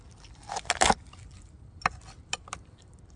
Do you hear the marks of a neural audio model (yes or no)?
no